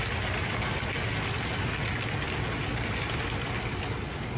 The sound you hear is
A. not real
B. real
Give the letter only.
B